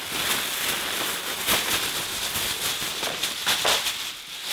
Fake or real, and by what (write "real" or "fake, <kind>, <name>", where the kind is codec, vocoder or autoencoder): real